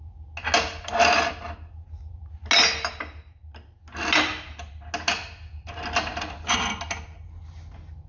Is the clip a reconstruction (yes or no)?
no